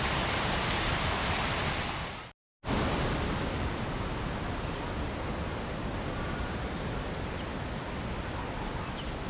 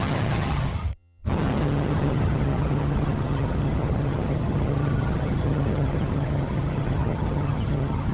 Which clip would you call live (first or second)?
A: first